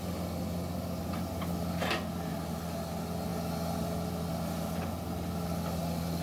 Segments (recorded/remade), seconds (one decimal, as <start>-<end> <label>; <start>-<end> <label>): 0.0-6.2 recorded